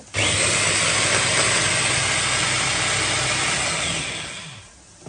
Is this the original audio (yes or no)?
yes